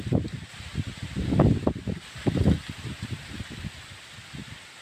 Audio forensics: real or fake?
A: real